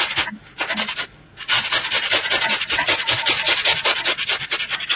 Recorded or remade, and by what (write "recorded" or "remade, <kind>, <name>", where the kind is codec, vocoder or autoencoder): recorded